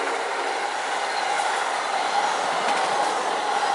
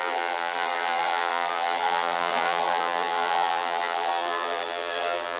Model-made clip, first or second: second